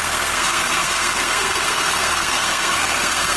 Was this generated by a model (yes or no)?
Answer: yes